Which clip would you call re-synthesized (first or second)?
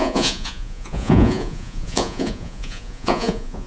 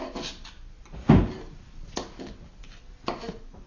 first